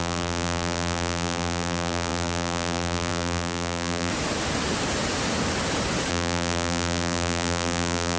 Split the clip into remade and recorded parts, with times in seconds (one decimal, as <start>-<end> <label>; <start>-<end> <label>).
0.0-4.1 remade; 4.1-6.1 recorded; 6.1-8.2 remade